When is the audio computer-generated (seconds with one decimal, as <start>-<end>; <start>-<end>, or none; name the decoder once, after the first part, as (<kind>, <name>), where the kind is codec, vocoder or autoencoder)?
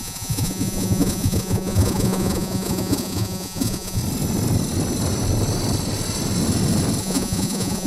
0.0-4.0 (vocoder, Vocos); 7.0-7.9